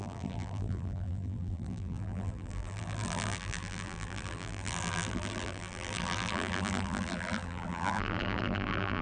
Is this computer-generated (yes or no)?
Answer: yes